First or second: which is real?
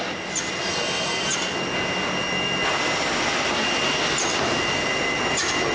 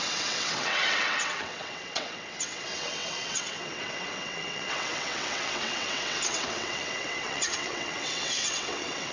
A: first